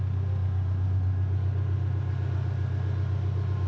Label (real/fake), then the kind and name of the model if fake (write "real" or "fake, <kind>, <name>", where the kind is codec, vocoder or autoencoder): real